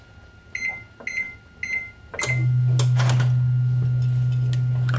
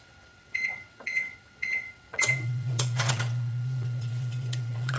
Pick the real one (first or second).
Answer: first